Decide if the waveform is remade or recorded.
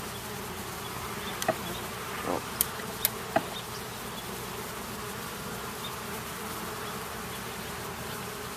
recorded